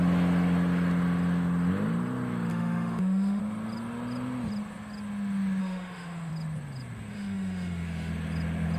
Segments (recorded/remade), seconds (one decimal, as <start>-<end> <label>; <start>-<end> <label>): 0.0-2.5 recorded; 2.5-3.4 remade; 3.4-5.6 recorded; 5.6-6.3 remade; 6.3-7.1 recorded; 7.1-8.1 remade; 8.1-8.8 recorded